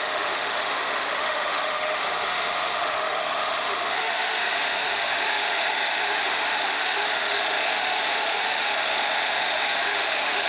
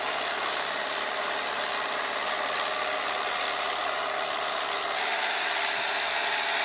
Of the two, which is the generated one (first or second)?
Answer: first